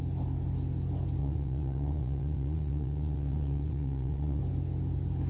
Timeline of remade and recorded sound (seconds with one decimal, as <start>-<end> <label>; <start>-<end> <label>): 0.0-1.2 recorded; 1.2-4.4 remade; 4.4-5.3 recorded